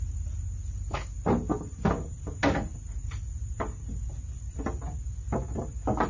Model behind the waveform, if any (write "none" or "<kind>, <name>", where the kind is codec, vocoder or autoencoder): none